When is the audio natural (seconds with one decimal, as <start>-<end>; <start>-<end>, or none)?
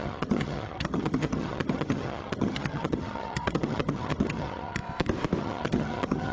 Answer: 4.8-5.4